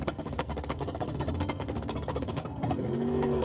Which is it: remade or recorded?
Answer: remade